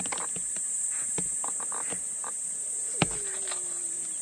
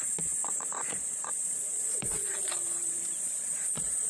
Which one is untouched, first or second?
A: first